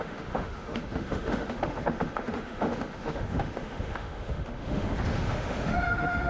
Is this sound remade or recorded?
remade